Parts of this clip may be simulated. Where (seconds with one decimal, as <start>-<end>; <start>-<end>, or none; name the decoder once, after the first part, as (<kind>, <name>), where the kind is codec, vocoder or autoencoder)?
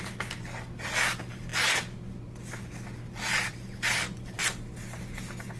none